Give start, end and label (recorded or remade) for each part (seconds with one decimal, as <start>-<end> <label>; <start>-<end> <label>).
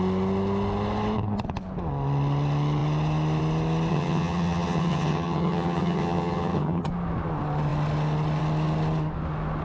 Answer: 0.0-3.9 recorded; 3.9-6.9 remade; 6.9-9.6 recorded